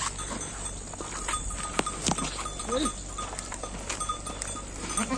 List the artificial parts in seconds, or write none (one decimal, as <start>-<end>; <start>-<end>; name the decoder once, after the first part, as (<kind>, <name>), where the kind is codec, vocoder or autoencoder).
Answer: none